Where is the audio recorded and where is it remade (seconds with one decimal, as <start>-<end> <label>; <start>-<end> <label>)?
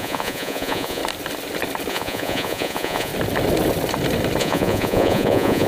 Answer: 0.0-1.0 remade; 1.0-1.9 recorded; 1.9-3.1 remade; 3.1-4.4 recorded; 4.4-5.7 remade